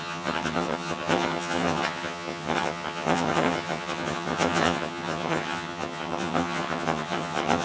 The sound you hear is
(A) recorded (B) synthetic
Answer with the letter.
B